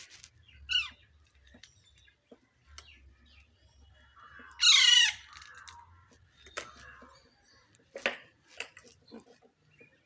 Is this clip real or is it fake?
real